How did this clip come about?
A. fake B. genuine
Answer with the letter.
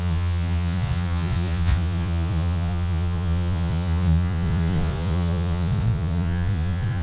A